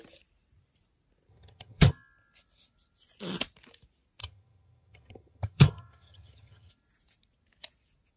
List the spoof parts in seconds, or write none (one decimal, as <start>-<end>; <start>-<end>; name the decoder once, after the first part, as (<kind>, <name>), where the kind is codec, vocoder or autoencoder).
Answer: 1.3-1.9 (vocoder, HiFi-GAN); 4.2-6.7